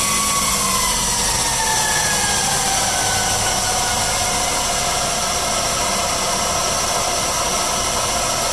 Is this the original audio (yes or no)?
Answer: yes